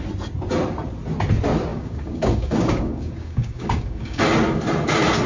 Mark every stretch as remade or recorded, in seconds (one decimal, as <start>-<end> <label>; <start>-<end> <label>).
0.0-1.7 recorded; 1.7-4.2 remade; 4.2-5.3 recorded